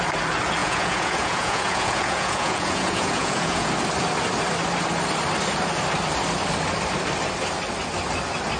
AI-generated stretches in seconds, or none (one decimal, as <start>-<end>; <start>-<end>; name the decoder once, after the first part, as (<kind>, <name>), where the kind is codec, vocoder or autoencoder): 0.6-3.7 (vocoder, Vocos)

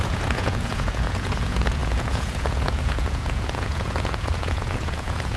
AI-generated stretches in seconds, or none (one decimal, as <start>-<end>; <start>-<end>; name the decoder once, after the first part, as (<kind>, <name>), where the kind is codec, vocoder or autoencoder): 0.0-5.4 (vocoder, Vocos)

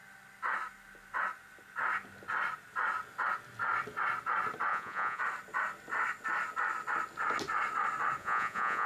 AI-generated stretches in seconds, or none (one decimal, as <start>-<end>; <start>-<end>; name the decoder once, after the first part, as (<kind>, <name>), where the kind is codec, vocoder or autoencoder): 4.7-5.2 (vocoder, Vocos); 8.2-8.9

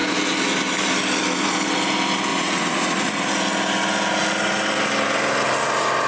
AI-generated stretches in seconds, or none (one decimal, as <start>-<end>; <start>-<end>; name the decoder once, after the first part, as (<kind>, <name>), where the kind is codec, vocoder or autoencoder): 2.3-3.3 (vocoder, Vocos)